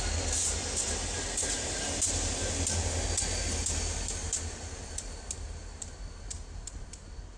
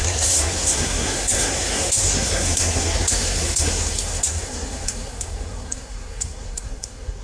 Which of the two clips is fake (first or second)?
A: second